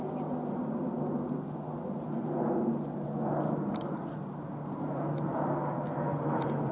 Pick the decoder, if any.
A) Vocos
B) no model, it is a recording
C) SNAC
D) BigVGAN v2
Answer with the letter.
B